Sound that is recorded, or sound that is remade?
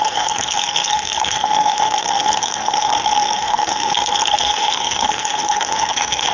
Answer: remade